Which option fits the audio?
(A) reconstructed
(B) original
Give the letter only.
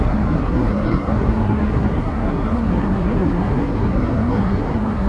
A